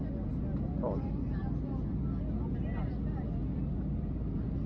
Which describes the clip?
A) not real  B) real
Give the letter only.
B